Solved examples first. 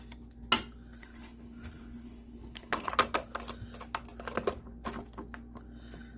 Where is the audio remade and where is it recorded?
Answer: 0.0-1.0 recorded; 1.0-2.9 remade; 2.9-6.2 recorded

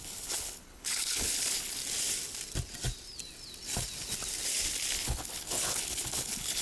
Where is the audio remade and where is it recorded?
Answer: 0.0-1.8 remade; 1.8-4.9 recorded; 4.9-6.6 remade